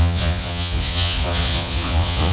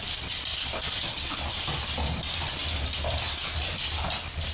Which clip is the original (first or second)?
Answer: second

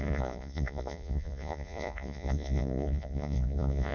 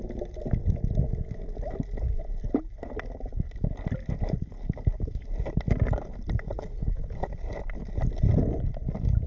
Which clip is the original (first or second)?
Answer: second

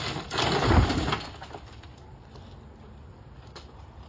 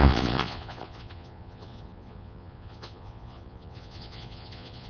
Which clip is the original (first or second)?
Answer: first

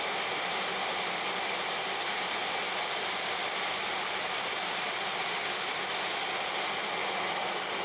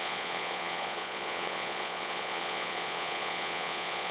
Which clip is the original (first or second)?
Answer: first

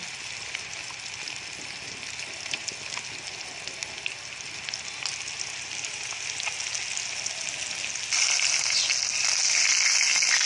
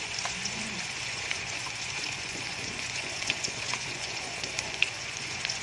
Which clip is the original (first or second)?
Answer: first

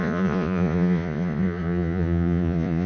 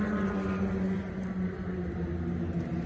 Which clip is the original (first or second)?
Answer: second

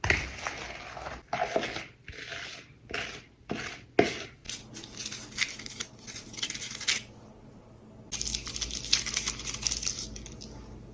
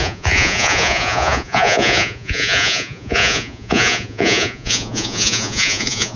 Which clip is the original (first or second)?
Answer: first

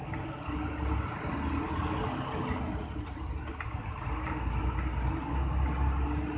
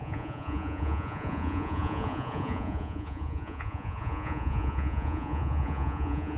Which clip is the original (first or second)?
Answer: first